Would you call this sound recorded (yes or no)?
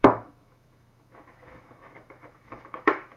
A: no